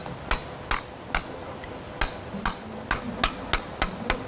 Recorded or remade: recorded